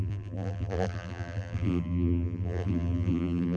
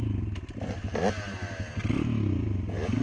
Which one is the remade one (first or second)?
first